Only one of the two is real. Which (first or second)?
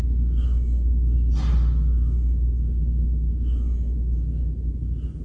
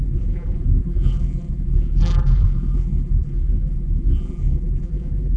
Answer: first